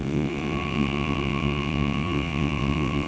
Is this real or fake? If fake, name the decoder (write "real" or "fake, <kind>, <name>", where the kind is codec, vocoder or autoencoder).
fake, vocoder, WaveNeXt